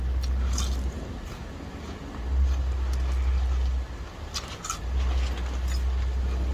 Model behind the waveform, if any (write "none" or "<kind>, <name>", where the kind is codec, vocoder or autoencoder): none